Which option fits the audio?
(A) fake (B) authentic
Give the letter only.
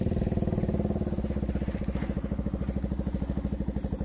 B